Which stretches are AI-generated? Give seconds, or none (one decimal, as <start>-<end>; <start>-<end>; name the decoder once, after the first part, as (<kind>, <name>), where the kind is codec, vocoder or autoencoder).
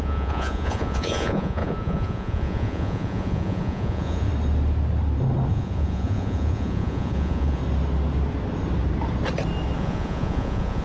0.0-4.3 (vocoder, Vocos); 5.5-7.6; 9.8-10.8